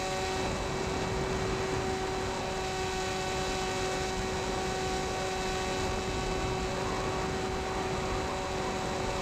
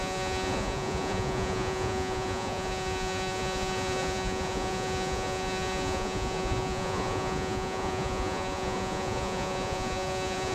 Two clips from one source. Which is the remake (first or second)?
second